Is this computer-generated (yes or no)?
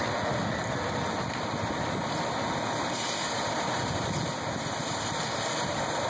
yes